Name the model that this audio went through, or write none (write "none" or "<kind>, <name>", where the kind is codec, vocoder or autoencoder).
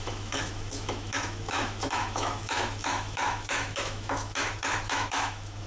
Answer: autoencoder, DAC-VAE